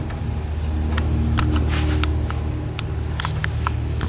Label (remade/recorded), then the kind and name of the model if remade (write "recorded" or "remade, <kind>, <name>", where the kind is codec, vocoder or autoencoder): recorded